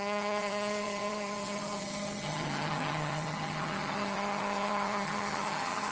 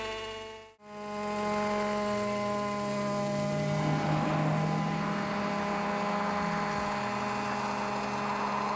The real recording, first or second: second